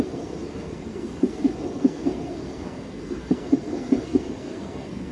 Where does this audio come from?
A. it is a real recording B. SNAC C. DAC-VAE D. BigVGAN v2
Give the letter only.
B